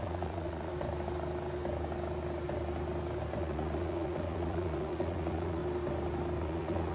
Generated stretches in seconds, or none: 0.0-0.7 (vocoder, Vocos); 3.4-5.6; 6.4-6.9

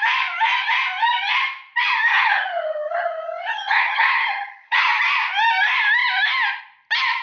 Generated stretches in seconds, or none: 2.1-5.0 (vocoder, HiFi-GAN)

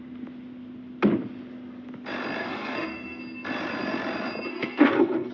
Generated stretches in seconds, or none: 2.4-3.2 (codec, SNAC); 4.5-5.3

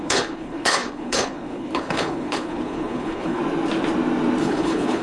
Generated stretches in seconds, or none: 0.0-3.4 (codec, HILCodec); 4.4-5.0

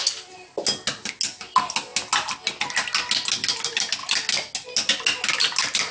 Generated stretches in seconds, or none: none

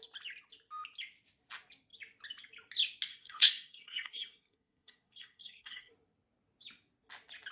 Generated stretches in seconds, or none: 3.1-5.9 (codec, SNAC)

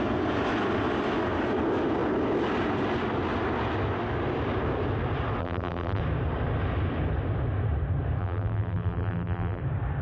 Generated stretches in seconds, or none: 5.4-6.0 (vocoder, BigVGAN v2); 8.2-9.6